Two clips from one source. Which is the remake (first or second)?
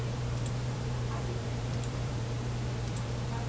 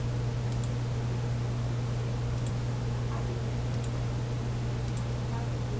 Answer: first